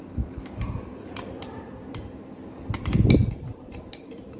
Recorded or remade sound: remade